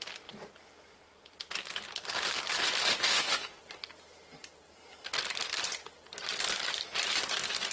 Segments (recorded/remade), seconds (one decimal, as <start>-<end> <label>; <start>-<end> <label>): 0.0-2.9 recorded; 2.9-3.6 remade; 3.6-7.7 recorded